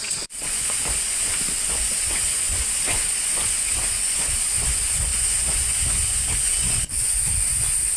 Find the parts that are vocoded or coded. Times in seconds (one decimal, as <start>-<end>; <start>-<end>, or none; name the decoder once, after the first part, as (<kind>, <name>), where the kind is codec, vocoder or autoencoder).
0.0-8.0 (vocoder, Vocos)